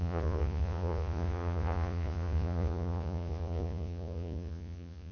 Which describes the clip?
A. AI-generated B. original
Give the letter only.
A